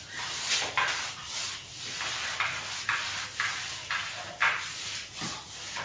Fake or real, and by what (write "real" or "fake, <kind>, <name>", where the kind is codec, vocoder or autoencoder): real